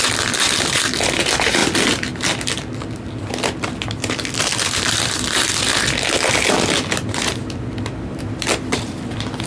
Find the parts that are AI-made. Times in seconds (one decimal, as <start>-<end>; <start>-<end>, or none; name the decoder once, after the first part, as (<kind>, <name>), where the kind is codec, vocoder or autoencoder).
0.0-1.6 (vocoder, BigVGAN v2); 4.4-5.7; 8.2-9.5